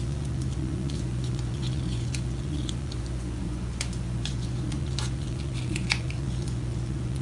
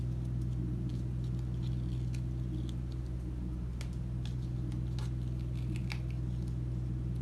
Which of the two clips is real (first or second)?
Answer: second